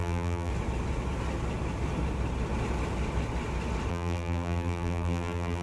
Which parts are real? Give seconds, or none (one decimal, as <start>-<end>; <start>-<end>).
0.5-3.9